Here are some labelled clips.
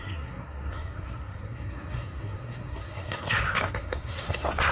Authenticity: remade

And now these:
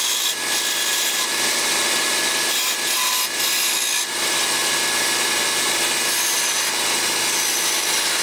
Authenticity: recorded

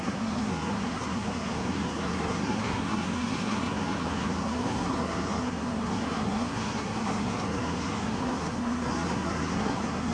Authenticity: remade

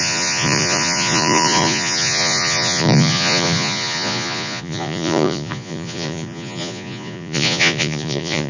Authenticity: remade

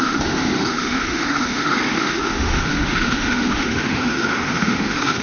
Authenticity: remade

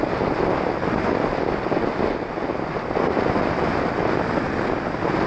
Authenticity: recorded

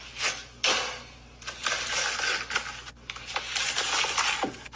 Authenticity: recorded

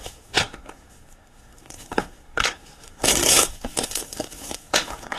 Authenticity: remade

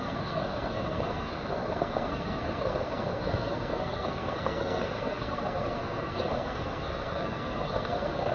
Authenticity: remade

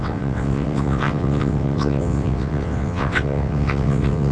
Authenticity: remade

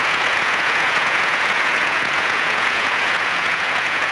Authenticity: remade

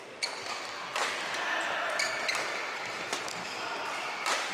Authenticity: recorded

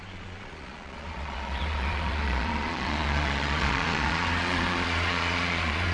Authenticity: remade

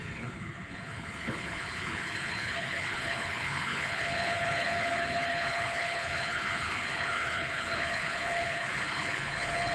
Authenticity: remade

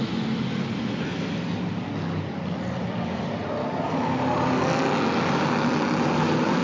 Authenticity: recorded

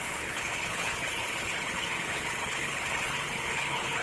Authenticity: remade